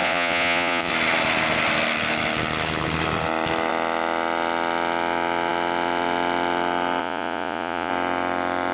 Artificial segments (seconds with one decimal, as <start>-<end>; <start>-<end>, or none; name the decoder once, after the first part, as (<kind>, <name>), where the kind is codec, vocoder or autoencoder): 0.0-0.9 (vocoder, Vocos); 7.0-7.9

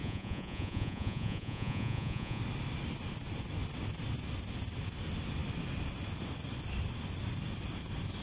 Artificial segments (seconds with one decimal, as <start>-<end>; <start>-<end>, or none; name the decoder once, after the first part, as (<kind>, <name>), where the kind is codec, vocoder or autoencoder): 0.0-2.4 (vocoder, Vocos)

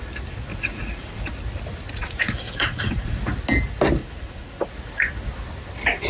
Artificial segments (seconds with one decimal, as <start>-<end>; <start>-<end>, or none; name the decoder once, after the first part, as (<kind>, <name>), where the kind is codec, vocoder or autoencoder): 0.5-1.3 (vocoder, Vocos); 2.0-3.2; 4.0-4.7

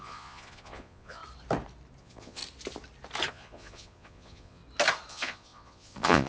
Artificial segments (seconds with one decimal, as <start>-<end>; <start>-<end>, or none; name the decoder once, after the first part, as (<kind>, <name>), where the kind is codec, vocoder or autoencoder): 0.0-1.2 (vocoder, Vocos); 2.0-2.4; 3.3-4.6; 5.1-6.3